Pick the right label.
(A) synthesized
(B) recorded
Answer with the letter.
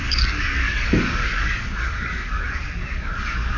A